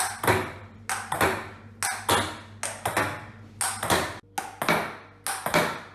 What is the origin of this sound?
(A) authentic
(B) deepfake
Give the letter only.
A